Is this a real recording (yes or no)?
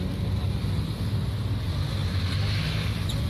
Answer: yes